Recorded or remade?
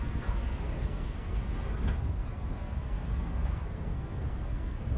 remade